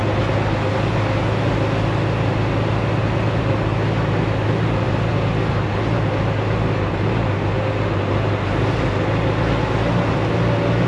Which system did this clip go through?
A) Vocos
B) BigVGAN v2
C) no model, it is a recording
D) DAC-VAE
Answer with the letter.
C